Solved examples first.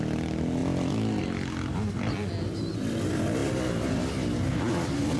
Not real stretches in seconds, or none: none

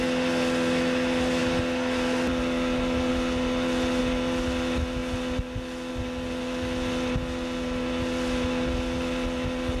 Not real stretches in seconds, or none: none